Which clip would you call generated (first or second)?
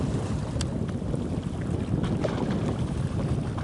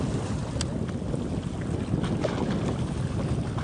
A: first